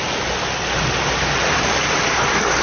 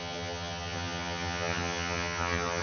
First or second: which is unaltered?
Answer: first